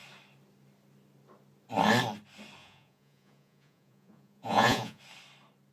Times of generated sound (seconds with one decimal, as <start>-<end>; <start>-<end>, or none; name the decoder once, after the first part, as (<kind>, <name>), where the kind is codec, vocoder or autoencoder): 2.6-5.0 (vocoder, Vocos)